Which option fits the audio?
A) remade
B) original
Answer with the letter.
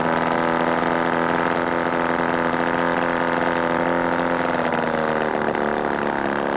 B